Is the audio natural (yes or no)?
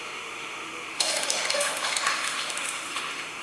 no